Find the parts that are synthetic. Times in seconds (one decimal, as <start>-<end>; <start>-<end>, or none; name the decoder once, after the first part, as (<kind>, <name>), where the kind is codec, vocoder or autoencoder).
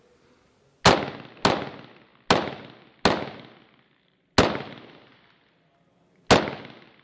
none